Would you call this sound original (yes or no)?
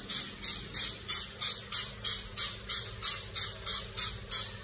yes